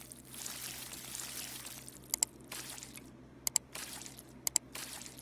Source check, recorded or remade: recorded